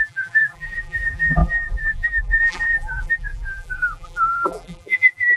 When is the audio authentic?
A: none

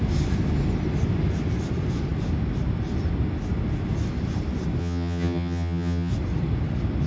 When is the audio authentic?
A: 0.0-4.8; 6.1-7.1

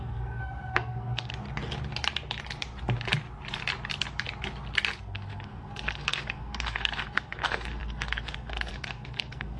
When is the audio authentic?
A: 1.3-5.0

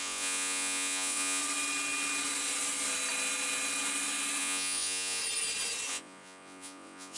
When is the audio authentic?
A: 1.4-4.4; 5.2-5.9